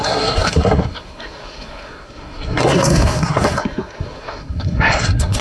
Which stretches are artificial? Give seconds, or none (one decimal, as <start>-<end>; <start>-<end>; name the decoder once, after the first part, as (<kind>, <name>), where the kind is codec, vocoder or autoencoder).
0.0-5.4 (codec, SNAC)